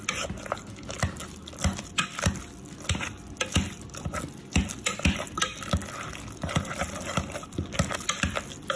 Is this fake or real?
real